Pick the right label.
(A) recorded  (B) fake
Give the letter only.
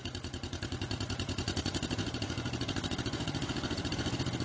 B